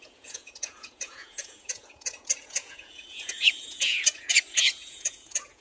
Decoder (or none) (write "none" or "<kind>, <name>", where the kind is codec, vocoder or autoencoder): vocoder, Vocos